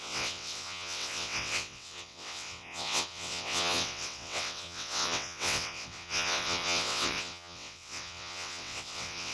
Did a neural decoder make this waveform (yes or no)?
yes